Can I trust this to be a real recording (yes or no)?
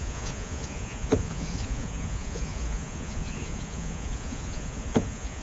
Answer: no